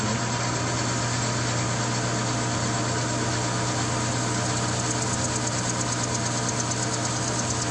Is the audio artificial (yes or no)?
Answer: no